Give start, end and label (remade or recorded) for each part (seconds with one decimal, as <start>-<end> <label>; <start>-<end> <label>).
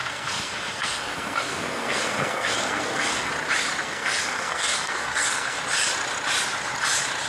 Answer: 0.0-3.3 remade; 3.3-3.8 recorded; 3.8-5.6 remade; 5.6-7.3 recorded